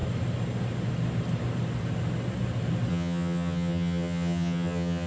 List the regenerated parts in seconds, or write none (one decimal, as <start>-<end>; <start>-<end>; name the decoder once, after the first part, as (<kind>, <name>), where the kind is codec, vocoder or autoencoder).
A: 2.9-5.1 (vocoder, HiFi-GAN)